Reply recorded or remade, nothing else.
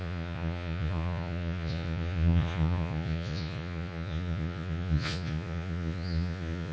remade